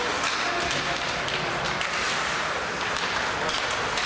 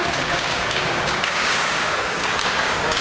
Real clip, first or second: first